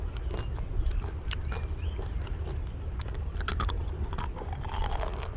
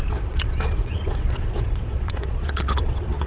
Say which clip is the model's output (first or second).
second